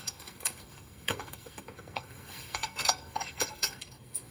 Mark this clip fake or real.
fake